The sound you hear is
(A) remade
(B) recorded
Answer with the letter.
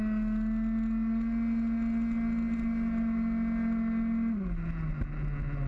B